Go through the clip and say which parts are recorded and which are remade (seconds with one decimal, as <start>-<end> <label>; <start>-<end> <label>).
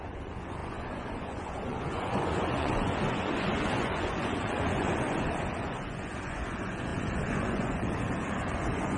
0.0-9.0 remade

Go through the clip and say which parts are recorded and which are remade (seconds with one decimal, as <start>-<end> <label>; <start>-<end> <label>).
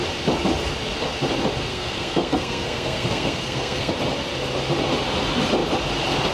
0.0-1.7 recorded; 1.7-3.9 remade; 3.9-6.3 recorded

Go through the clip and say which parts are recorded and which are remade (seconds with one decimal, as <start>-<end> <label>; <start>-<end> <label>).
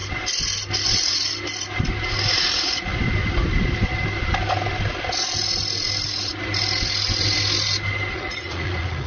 0.0-2.4 recorded; 2.4-2.9 remade; 2.9-8.1 recorded; 8.1-9.1 remade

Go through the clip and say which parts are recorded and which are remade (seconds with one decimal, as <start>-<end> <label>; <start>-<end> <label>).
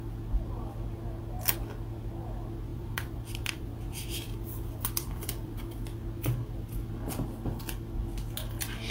0.0-2.7 recorded; 2.7-5.6 remade; 5.6-8.9 recorded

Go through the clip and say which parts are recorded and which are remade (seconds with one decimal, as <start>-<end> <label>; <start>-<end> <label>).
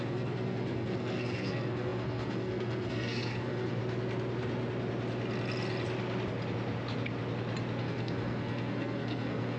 0.0-3.8 remade; 3.8-7.8 recorded; 7.8-9.6 remade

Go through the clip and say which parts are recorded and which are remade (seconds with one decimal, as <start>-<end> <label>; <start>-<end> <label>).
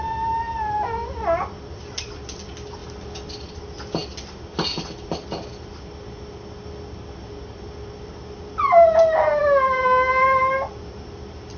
0.0-11.6 recorded